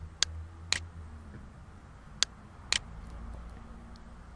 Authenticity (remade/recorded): recorded